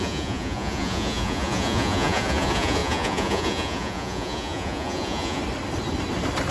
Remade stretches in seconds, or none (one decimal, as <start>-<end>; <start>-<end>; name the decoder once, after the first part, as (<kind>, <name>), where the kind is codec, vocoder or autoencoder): 0.0-5.4 (vocoder, Vocos)